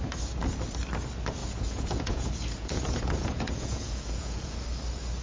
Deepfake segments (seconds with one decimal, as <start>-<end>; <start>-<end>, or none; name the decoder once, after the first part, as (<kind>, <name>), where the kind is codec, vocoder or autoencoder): 1.4-4.5 (vocoder, Vocos)